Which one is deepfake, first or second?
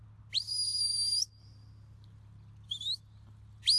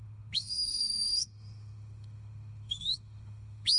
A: second